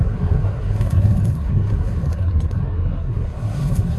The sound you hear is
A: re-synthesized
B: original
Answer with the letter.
A